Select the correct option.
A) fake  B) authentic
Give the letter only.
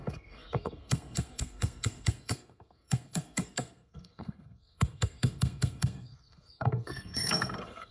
A